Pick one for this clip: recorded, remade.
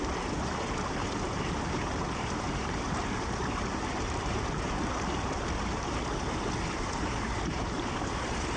remade